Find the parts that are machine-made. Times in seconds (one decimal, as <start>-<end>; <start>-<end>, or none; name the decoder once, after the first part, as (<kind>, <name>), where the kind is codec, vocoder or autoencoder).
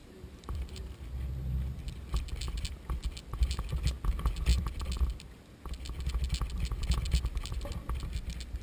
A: 0.0-0.9 (vocoder, BigVGAN v2)